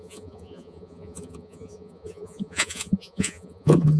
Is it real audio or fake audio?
fake